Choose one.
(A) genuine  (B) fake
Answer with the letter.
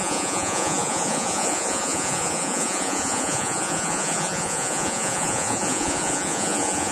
B